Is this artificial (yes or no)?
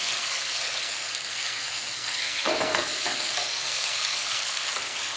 yes